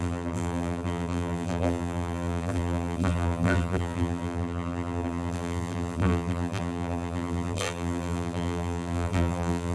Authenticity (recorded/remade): remade